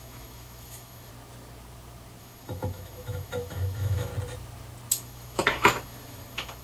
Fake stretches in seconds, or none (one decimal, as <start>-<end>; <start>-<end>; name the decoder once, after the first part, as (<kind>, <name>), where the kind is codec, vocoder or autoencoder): 0.0-1.1 (autoencoder, DAC-VAE); 2.2-4.1; 4.9-6.6